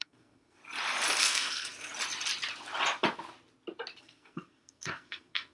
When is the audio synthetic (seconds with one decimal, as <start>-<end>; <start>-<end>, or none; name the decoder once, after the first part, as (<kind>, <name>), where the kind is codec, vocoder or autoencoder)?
0.0-0.6 (codec, SNAC); 1.2-1.9; 4.0-5.5